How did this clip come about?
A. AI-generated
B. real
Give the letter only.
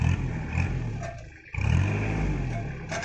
B